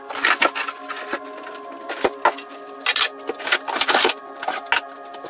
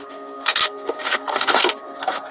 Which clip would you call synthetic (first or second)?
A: second